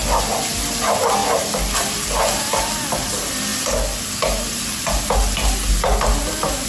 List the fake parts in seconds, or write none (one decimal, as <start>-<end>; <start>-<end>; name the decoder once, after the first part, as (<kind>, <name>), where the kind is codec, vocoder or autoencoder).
none